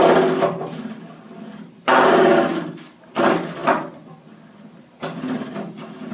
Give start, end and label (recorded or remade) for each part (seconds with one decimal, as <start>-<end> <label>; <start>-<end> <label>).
0.0-6.1 recorded